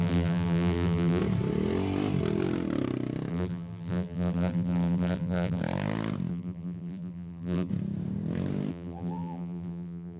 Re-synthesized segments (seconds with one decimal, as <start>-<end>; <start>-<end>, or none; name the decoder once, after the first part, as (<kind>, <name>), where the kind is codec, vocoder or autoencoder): 0.0-1.2 (vocoder, BigVGAN v2); 3.3-5.6; 6.3-7.7; 8.7-10.2